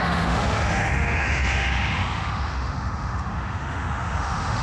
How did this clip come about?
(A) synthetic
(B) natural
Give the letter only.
A